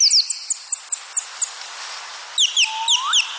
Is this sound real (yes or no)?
yes